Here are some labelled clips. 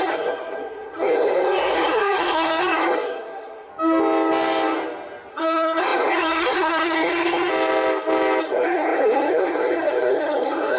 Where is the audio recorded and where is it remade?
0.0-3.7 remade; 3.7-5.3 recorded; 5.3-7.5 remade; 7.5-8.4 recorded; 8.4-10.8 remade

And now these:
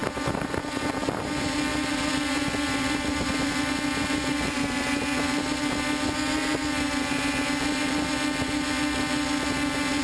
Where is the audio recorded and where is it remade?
0.0-0.9 remade; 0.9-1.7 recorded; 1.7-5.0 remade; 5.0-10.0 recorded

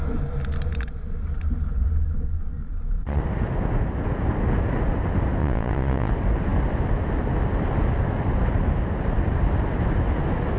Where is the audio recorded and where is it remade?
0.0-2.6 recorded; 2.6-3.2 remade; 3.2-5.4 recorded; 5.4-6.1 remade; 6.1-10.6 recorded

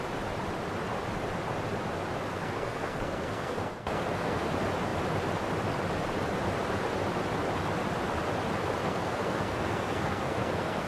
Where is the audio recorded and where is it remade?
0.0-2.3 recorded; 2.3-4.5 remade; 4.5-8.8 recorded; 8.8-10.9 remade

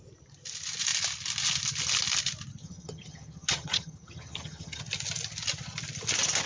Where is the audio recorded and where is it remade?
0.0-2.6 recorded; 2.6-4.8 remade; 4.8-6.5 recorded

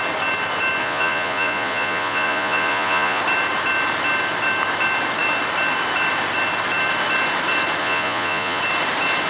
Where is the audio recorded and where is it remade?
0.0-0.8 recorded; 0.8-3.2 remade; 3.2-7.8 recorded; 7.8-8.6 remade; 8.6-9.3 recorded

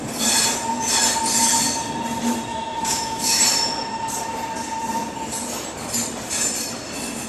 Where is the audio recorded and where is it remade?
0.0-2.5 recorded; 2.5-3.4 remade; 3.4-7.3 recorded

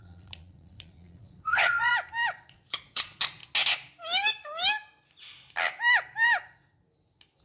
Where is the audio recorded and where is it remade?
0.0-1.9 remade; 1.9-2.5 recorded; 2.5-3.4 remade; 3.4-7.4 recorded